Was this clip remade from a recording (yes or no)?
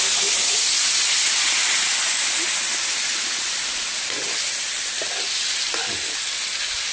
no